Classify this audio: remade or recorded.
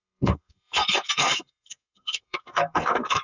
remade